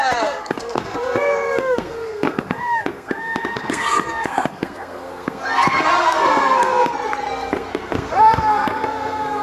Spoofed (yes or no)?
yes